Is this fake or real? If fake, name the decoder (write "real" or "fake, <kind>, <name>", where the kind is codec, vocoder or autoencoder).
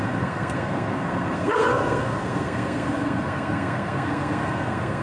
fake, codec, SNAC